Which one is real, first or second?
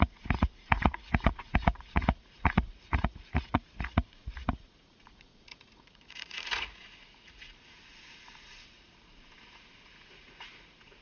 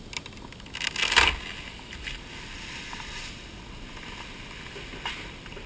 second